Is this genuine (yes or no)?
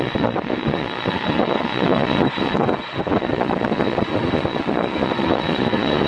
no